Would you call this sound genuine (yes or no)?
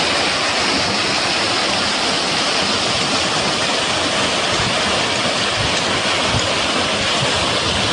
yes